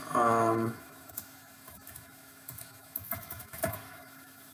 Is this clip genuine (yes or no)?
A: no